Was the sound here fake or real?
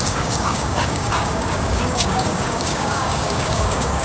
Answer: fake